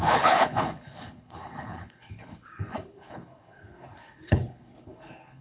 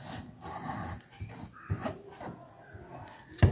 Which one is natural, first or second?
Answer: second